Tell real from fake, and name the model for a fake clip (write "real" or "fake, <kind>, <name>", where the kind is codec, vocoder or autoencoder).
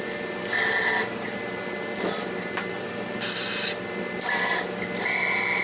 real